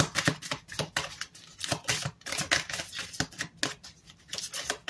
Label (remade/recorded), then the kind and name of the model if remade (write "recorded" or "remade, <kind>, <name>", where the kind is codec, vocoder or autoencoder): recorded